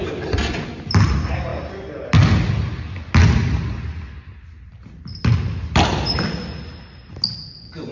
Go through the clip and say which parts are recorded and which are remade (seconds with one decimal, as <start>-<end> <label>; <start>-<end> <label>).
0.0-7.9 recorded